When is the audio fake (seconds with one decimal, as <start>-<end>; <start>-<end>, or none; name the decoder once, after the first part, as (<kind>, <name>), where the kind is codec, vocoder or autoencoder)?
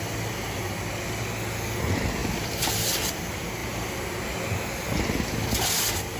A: none